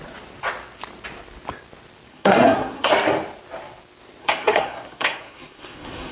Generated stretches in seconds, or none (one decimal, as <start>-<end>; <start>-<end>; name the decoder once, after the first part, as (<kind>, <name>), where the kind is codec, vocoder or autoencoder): 2.1-2.9 (codec, SNAC); 4.2-6.1